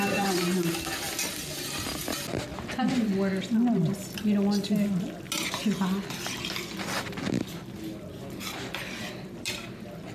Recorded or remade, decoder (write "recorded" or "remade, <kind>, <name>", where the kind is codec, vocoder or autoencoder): recorded